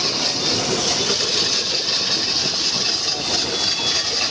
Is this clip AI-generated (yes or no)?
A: no